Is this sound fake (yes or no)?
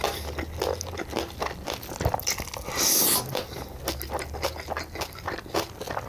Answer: no